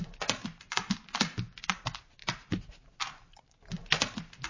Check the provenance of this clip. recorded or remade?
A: recorded